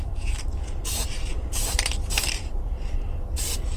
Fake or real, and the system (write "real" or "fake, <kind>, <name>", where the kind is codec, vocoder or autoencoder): fake, vocoder, BigVGAN v2